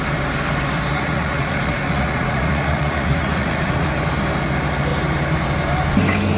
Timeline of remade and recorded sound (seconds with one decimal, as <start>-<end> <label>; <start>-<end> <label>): 0.0-0.9 recorded; 0.9-3.9 remade; 3.9-6.4 recorded